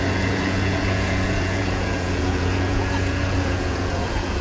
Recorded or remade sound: remade